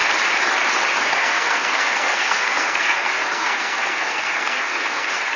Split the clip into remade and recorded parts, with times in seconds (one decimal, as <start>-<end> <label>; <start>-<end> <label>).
0.0-0.9 recorded; 0.9-5.4 remade